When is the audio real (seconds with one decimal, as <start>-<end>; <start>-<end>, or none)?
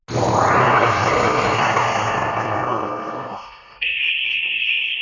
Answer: 0.0-0.6